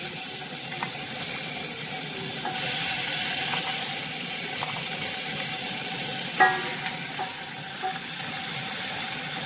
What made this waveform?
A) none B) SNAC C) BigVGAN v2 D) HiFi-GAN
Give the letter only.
A